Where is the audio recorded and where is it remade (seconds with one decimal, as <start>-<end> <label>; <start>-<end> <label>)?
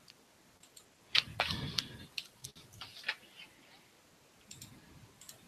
0.0-5.5 recorded